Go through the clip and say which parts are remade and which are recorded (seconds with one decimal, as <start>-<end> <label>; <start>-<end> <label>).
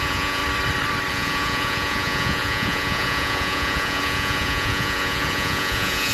0.0-0.4 remade; 0.4-1.1 recorded; 1.1-6.1 remade